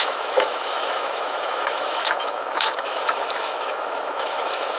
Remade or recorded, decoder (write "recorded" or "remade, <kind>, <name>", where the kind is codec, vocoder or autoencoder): remade, autoencoder, DAC-VAE